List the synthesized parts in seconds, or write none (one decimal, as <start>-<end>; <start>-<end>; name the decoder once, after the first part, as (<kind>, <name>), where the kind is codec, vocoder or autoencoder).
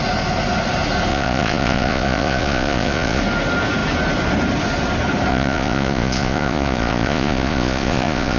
1.1-3.2 (vocoder, Vocos); 5.3-8.4